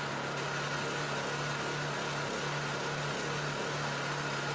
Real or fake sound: real